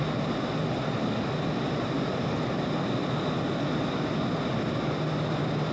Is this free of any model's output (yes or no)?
yes